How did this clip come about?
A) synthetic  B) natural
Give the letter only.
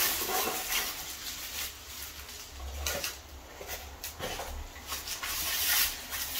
B